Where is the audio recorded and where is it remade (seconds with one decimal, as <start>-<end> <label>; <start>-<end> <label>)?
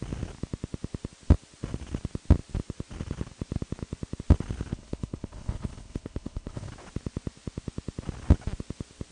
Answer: 0.0-4.7 recorded; 4.7-6.7 remade; 6.7-9.1 recorded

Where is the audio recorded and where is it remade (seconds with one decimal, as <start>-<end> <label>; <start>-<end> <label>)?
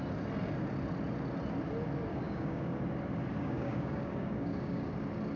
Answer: 0.0-2.1 recorded; 2.1-2.8 remade; 2.8-3.4 recorded; 3.4-4.9 remade; 4.9-5.4 recorded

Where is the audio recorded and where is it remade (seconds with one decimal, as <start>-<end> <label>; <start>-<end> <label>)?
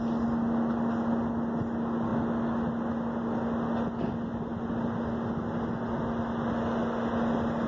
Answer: 0.0-7.7 recorded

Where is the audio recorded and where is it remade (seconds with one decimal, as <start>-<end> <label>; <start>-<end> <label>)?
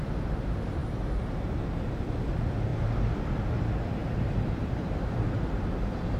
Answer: 0.0-0.8 recorded; 0.8-1.5 remade; 1.5-4.0 recorded; 4.0-6.2 remade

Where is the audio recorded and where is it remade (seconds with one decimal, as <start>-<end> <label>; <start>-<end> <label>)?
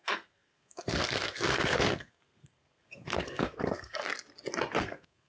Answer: 0.0-4.0 remade; 4.0-4.8 recorded; 4.8-5.3 remade